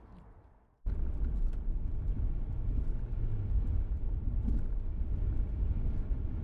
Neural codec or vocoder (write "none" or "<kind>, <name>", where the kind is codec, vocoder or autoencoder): vocoder, BigVGAN v2